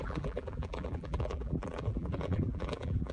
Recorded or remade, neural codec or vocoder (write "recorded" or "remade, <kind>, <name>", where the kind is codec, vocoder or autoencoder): remade, vocoder, BigVGAN v2